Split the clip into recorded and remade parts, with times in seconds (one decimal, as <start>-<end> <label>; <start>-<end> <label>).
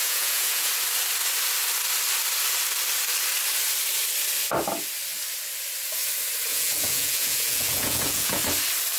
0.0-0.7 remade; 0.7-6.5 recorded; 6.5-8.4 remade; 8.4-9.0 recorded